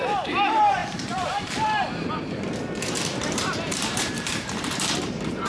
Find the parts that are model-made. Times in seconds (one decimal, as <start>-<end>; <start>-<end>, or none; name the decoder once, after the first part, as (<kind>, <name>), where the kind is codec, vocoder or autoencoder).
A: 0.0-5.5 (vocoder, BigVGAN v2)